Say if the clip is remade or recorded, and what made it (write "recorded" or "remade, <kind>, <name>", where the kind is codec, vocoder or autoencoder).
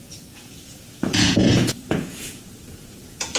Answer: remade, vocoder, Vocos